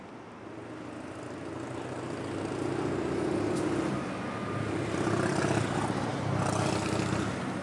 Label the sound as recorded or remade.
recorded